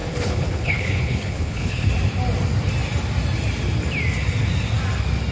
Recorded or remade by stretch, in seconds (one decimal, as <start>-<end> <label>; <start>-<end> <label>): 0.0-1.9 remade; 1.9-5.3 recorded